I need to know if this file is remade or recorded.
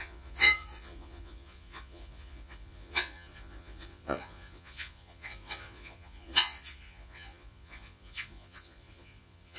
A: remade